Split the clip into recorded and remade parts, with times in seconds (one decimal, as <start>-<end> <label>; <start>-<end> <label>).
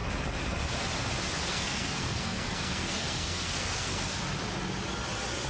0.0-1.5 recorded; 1.5-4.2 remade; 4.2-5.5 recorded